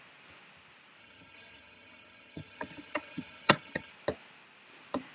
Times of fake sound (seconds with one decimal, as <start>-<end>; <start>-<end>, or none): 1.0-3.9